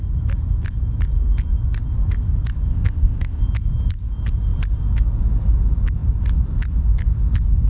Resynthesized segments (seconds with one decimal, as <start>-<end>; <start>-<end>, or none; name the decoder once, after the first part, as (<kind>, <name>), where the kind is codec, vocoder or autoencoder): 2.7-3.4 (codec, ZipCodec)